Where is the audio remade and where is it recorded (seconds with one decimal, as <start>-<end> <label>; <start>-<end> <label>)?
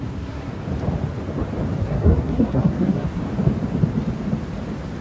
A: 0.0-0.5 remade; 0.5-1.8 recorded; 1.8-3.2 remade; 3.2-5.0 recorded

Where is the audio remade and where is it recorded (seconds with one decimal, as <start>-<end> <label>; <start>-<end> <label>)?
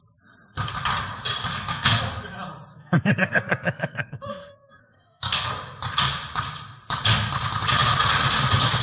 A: 0.0-1.5 recorded; 1.5-2.0 remade; 2.0-2.7 recorded; 2.7-5.5 remade; 5.5-8.8 recorded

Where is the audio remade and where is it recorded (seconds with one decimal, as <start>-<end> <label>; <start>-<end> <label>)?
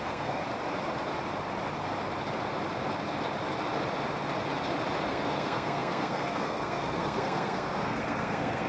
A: 0.0-0.4 remade; 0.4-5.1 recorded; 5.1-8.7 remade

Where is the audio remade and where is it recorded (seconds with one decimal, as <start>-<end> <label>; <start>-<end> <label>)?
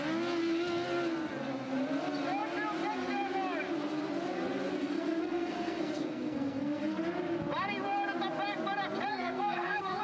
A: 0.0-4.8 recorded; 4.8-7.0 remade; 7.0-9.1 recorded; 9.1-10.0 remade